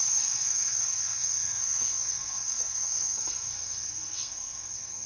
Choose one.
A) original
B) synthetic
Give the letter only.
B